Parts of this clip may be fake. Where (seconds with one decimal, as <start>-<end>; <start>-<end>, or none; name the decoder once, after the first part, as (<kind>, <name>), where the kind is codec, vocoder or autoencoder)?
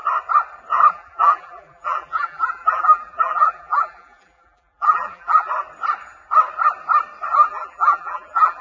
0.9-5.5 (vocoder, BigVGAN v2); 7.3-8.6